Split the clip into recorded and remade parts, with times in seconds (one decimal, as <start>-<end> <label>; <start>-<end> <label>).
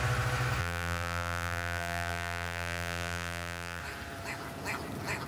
0.0-0.6 recorded; 0.6-3.8 remade; 3.8-5.3 recorded